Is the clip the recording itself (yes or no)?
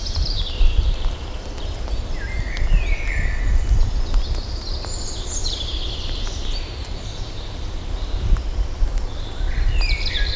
yes